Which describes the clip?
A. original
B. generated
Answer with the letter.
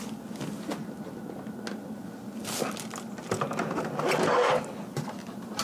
A